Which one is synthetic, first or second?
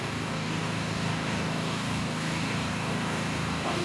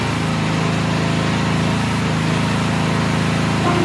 first